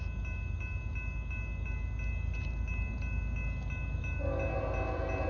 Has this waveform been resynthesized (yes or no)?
no